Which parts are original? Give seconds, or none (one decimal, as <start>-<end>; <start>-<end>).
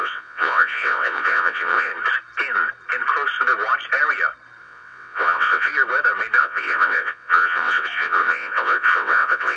1.9-4.6; 5.7-6.4